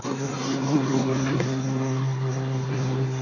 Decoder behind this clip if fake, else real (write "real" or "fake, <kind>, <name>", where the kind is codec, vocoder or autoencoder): fake, codec, SNAC